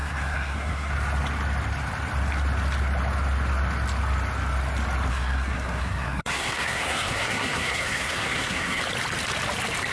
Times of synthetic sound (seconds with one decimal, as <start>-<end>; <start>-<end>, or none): 0.0-0.9; 5.1-8.8